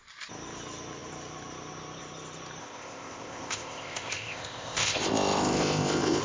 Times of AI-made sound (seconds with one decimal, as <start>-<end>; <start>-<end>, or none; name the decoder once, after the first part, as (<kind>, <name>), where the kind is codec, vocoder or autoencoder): 2.6-6.2 (codec, ZipCodec)